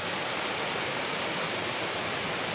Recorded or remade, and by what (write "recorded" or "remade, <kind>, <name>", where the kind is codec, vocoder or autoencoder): recorded